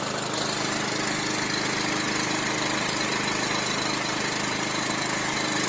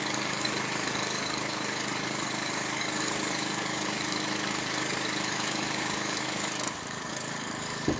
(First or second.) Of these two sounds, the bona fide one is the first